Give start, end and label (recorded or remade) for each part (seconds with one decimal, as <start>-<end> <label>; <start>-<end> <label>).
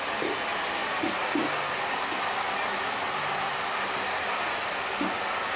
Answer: 0.0-5.6 recorded